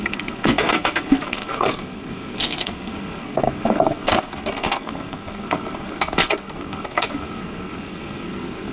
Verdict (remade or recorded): remade